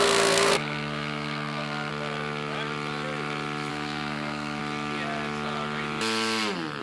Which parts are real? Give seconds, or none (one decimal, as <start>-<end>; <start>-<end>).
1.9-3.7; 4.6-6.8